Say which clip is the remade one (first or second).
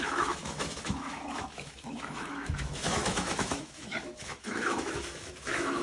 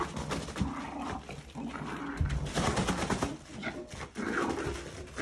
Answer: first